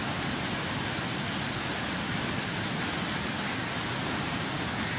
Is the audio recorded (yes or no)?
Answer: yes